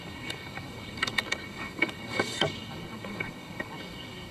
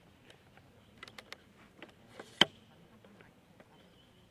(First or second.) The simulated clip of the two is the first